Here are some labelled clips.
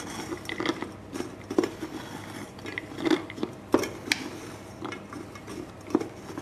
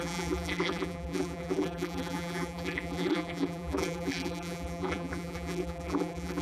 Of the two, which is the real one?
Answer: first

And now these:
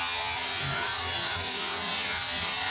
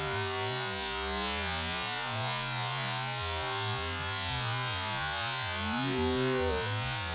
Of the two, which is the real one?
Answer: second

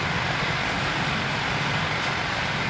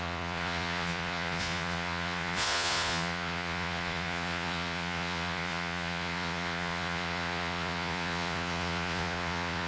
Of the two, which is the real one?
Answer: first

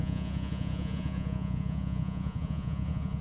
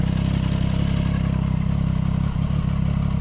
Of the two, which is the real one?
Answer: second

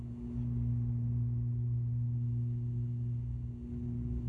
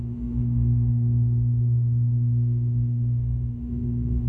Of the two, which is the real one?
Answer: first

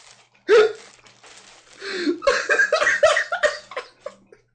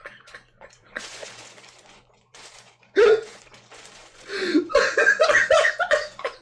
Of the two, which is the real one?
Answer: first